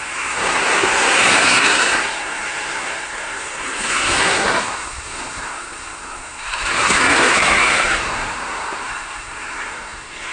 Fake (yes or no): yes